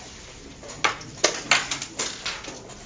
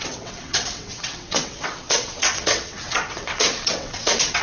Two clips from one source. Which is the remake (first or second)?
second